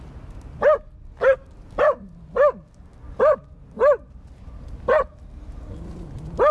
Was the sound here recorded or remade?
recorded